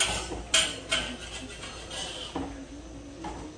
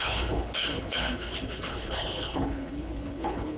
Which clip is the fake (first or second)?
second